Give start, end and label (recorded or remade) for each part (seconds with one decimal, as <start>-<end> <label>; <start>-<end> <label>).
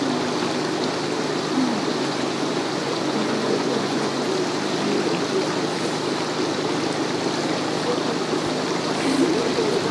0.0-1.9 recorded; 1.9-4.3 remade; 4.3-9.9 recorded